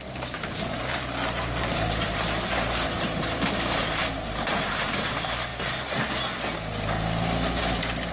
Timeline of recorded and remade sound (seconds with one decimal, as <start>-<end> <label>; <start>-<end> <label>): 0.0-5.5 remade; 5.5-7.6 recorded; 7.6-8.1 remade